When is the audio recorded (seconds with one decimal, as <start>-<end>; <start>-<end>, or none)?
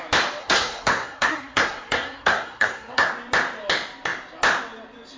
0.0-0.4; 3.1-5.2